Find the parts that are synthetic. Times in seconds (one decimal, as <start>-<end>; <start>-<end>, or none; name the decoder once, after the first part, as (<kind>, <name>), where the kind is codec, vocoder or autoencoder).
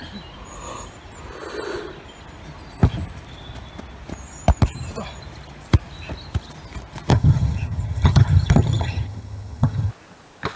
7.1-9.9 (vocoder, HiFi-GAN)